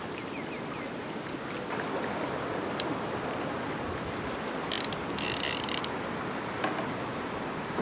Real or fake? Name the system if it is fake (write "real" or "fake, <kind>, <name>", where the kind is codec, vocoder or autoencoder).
real